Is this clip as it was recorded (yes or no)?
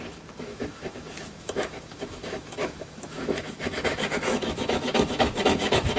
no